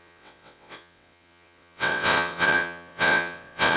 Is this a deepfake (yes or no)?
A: yes